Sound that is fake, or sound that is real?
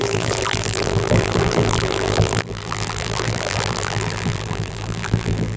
fake